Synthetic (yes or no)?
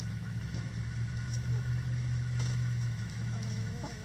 yes